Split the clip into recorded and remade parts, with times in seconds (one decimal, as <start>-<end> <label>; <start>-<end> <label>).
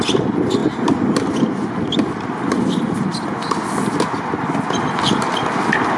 0.0-6.0 recorded